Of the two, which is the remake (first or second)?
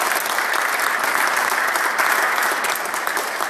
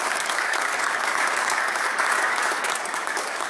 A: second